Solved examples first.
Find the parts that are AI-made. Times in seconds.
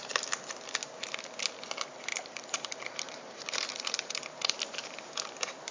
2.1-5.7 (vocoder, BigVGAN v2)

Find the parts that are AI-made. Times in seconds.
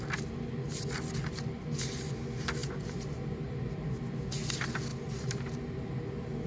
2.6-3.7 (vocoder, BigVGAN v2); 4.9-5.8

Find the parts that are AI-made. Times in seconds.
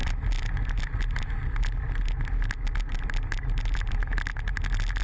3.0-4.1 (vocoder, BigVGAN v2)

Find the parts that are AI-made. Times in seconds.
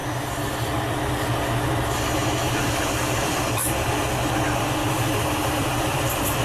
2.6-3.6 (vocoder, BigVGAN v2); 4.9-6.4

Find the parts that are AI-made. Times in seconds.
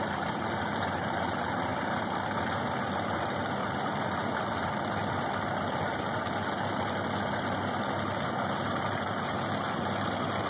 1.7-2.6 (vocoder, BigVGAN v2); 3.6-5.1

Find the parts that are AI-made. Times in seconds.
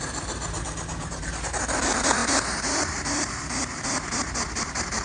0.0-5.0 (vocoder, BigVGAN v2)